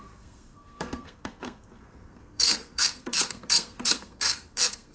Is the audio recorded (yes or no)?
no